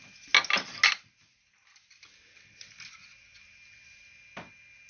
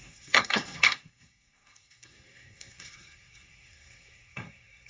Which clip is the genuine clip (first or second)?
first